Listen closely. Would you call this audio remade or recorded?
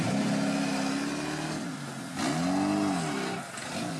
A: recorded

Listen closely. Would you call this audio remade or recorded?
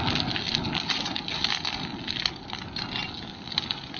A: recorded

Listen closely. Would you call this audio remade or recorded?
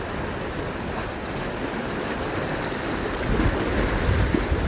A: recorded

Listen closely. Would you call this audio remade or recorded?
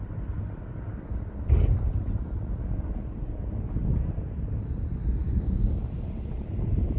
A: recorded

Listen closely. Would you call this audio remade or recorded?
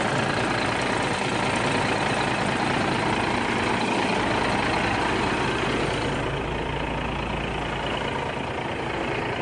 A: recorded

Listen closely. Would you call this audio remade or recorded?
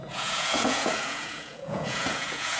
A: remade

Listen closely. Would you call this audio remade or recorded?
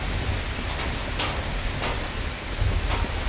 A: recorded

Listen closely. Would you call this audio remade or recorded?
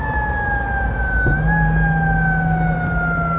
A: recorded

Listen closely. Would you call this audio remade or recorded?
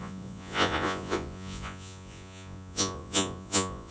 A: remade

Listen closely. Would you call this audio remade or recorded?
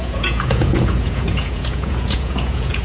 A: remade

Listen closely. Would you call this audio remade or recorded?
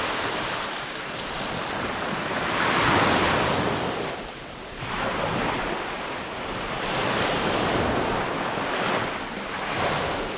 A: recorded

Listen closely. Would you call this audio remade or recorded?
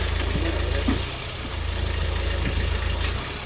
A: recorded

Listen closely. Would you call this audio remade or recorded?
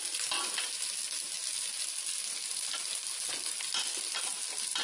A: recorded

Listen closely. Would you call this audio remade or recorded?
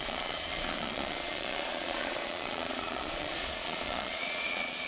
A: remade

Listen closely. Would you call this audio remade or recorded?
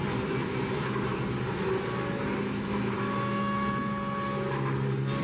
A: recorded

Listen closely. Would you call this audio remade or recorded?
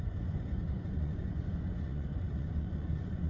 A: remade